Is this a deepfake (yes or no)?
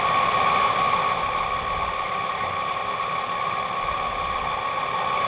yes